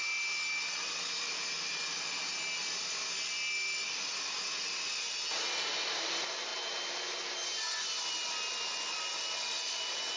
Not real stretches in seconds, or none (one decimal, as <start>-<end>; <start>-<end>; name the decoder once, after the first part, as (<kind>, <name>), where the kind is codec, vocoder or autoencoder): none

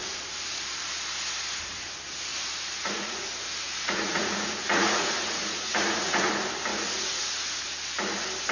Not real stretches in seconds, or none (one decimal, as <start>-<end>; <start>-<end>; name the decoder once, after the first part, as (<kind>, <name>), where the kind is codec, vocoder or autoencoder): 0.0-0.8 (vocoder, Vocos); 2.3-6.3; 6.7-7.7

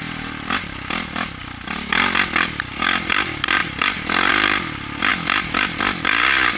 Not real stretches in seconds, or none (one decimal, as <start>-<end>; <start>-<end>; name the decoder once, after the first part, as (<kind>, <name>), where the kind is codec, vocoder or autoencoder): none